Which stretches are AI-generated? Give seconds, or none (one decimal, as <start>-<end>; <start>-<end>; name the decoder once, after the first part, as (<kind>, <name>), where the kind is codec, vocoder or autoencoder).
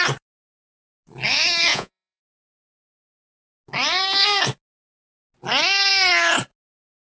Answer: 1.7-2.2 (vocoder, Vocos)